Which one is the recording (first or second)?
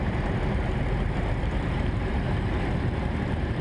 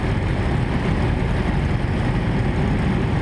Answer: second